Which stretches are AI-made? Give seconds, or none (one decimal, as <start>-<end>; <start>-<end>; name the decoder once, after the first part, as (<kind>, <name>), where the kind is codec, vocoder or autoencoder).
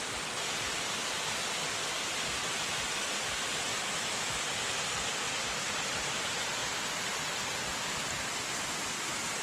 3.7-4.4 (autoencoder, DAC-VAE)